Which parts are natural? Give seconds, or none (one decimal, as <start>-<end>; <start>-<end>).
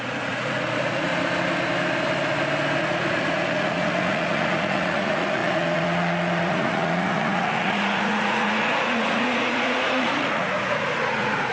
1.1-2.8